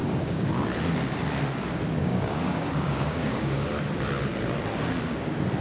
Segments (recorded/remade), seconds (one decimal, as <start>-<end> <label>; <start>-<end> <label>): 0.0-0.5 remade; 0.5-2.0 recorded; 2.0-3.7 remade; 3.7-5.6 recorded